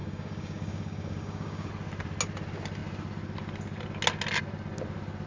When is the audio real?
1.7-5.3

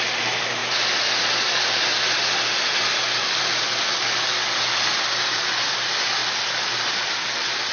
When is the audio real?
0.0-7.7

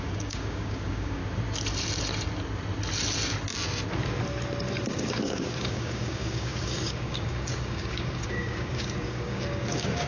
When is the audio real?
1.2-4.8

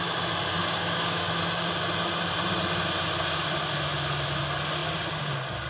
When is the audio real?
0.0-0.6; 1.3-5.7